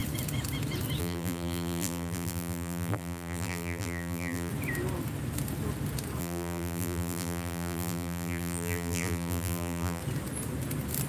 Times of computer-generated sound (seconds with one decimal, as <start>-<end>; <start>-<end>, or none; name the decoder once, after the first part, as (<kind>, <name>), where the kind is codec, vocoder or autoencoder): 1.0-4.5 (vocoder, BigVGAN v2); 6.2-10.0